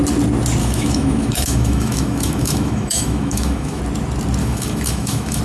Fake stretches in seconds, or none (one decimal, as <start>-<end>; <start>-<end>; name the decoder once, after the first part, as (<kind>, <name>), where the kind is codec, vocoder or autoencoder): 0.6-3.8 (autoencoder, DAC-VAE); 4.4-5.4